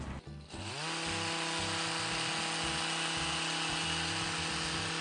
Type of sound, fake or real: real